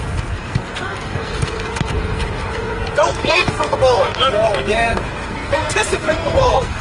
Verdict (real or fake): fake